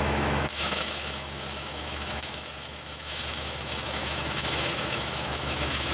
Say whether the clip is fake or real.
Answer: fake